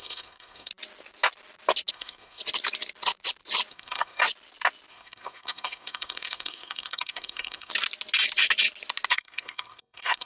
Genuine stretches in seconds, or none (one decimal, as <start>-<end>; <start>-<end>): 0.7-1.9; 2.4-3.7; 4.2-4.9; 7.7-9.1